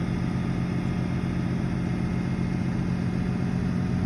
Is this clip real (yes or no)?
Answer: yes